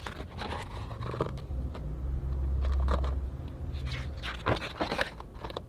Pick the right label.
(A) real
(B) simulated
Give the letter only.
A